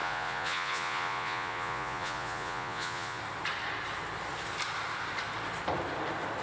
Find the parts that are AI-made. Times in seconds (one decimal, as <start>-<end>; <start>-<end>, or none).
0.0-3.2